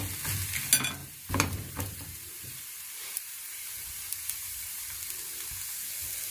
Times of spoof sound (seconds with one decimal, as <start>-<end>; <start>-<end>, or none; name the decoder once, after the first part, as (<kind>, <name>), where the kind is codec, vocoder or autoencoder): 1.0-4.8 (vocoder, BigVGAN v2)